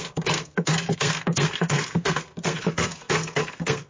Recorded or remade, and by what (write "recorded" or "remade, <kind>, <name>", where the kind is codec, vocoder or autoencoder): remade, codec, SNAC